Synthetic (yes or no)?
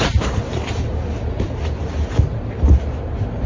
no